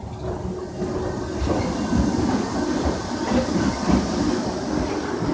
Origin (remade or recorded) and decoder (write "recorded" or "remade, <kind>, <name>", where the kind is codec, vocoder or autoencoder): recorded